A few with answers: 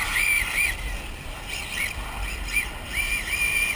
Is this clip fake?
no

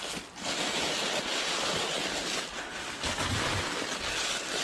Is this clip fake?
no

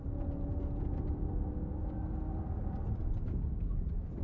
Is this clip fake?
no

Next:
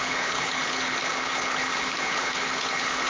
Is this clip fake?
yes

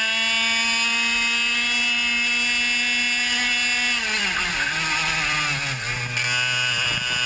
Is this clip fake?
no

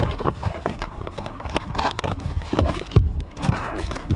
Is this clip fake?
yes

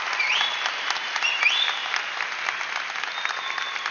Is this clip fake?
no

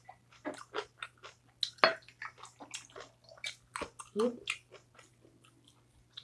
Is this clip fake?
no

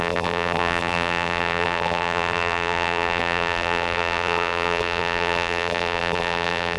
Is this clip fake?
yes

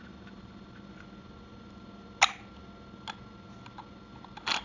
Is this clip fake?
no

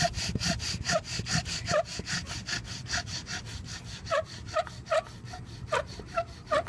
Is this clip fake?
no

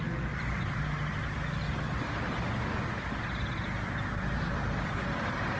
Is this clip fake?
no